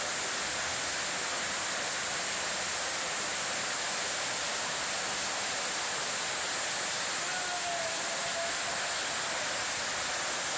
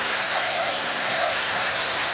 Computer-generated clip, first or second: second